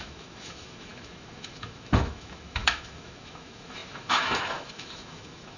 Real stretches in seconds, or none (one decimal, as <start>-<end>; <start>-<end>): none